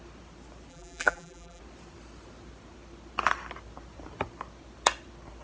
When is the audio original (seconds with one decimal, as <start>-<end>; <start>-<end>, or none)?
0.0-0.7; 1.6-5.4